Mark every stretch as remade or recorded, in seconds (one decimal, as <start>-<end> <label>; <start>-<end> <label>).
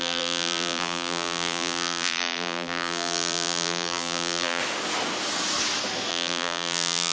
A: 0.0-4.6 remade; 4.6-6.1 recorded; 6.1-7.1 remade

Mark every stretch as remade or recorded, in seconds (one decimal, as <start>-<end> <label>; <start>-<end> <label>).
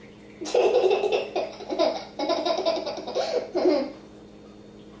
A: 0.0-5.0 recorded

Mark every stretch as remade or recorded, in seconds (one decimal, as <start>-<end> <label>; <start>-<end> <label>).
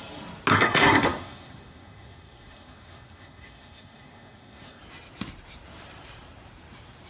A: 0.0-0.5 recorded; 0.5-4.8 remade; 4.8-7.1 recorded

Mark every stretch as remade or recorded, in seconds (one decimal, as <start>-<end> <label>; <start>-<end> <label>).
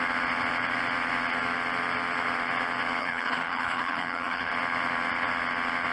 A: 0.0-3.0 recorded; 3.0-4.5 remade; 4.5-5.9 recorded